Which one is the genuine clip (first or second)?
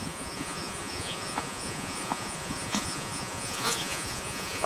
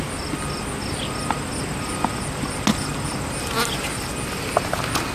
second